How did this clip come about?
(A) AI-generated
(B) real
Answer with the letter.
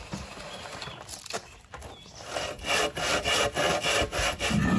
B